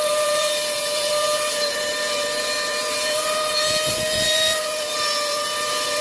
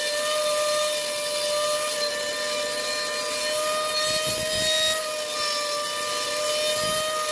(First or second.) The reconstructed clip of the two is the first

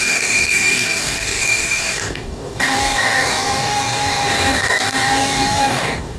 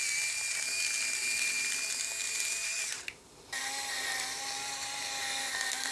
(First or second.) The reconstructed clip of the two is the first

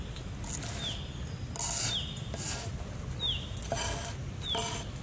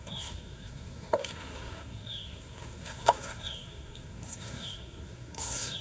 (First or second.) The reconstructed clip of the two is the second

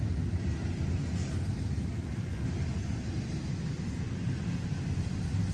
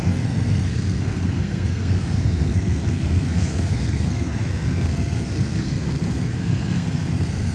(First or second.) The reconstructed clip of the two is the second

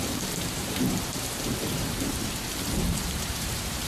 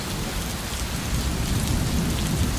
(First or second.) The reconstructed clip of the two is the first